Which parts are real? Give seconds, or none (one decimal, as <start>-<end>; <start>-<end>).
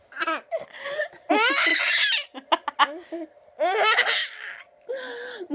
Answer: 0.0-4.2; 4.9-5.5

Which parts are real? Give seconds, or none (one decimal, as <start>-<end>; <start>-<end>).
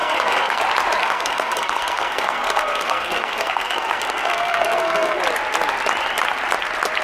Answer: 0.6-1.0; 5.2-7.0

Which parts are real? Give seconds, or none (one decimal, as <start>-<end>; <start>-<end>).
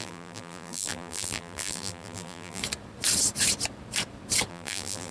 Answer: 2.6-4.5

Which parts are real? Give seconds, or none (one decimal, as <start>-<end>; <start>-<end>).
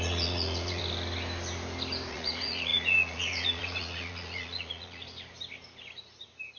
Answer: 0.8-2.1; 5.0-6.0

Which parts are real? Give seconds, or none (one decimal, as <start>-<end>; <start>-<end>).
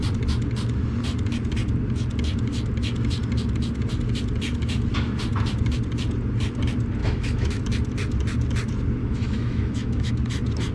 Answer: 0.0-7.0; 7.6-9.0; 10.1-10.7